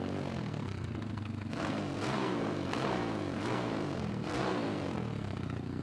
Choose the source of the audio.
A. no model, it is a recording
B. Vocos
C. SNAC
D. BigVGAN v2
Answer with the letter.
C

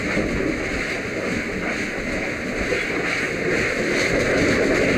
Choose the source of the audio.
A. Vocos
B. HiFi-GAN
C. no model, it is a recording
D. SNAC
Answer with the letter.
C